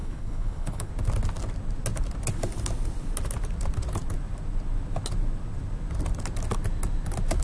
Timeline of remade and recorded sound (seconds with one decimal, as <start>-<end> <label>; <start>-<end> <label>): 0.0-0.9 remade; 0.9-7.4 recorded